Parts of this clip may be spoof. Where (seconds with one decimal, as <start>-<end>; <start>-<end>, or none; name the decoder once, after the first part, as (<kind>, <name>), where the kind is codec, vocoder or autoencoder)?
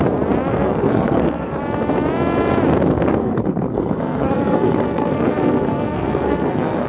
0.5-1.6 (codec, SNAC); 2.9-6.9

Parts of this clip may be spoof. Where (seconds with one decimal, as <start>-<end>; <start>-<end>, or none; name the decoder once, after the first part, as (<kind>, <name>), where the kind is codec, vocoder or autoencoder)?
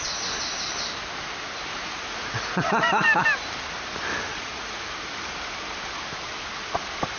1.7-2.7 (vocoder, Vocos); 4.3-5.0